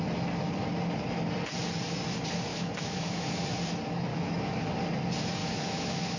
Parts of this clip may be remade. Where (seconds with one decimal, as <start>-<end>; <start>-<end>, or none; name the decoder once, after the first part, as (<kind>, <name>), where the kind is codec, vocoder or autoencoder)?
2.5-3.4 (autoencoder, DAC-VAE); 4.1-4.6; 5.4-6.2